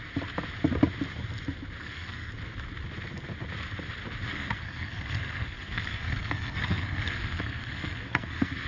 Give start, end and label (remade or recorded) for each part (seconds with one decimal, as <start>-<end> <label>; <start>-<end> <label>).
0.0-1.8 recorded; 1.8-2.3 remade; 2.3-4.3 recorded; 4.3-8.7 remade